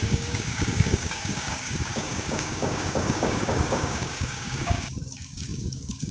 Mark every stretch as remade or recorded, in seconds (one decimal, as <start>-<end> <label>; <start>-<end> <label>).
0.0-6.1 remade